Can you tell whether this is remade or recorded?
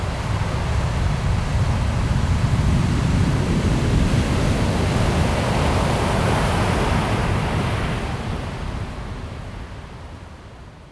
recorded